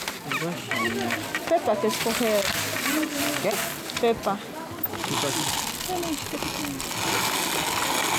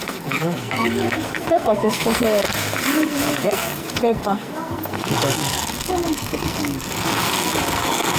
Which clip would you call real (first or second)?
first